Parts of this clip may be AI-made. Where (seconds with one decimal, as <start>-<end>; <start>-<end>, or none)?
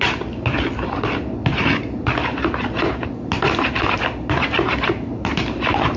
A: none